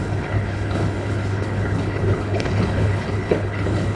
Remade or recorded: remade